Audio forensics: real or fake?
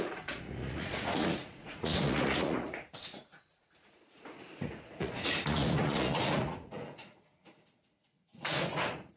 fake